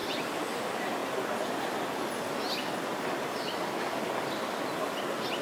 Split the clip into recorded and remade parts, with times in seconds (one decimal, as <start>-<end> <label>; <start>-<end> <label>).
0.0-5.4 recorded